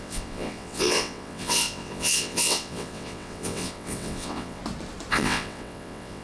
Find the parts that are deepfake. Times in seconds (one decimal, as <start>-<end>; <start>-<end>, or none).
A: 0.0-4.6; 5.1-6.2